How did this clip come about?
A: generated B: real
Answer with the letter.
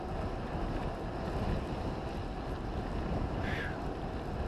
B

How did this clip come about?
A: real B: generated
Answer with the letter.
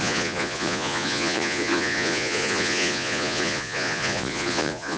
B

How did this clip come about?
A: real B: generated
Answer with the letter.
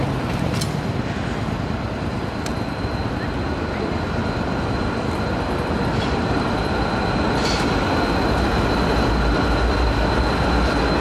A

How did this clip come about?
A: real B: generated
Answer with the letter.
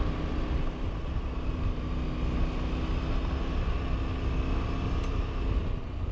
A